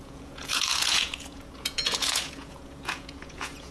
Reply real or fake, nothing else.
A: fake